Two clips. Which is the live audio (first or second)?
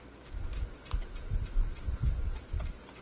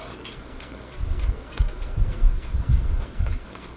first